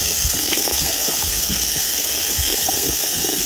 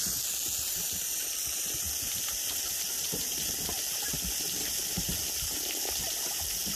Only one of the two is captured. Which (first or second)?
second